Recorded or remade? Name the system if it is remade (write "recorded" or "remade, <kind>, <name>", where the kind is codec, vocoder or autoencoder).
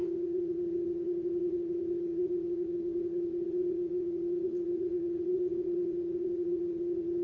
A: remade, vocoder, Vocos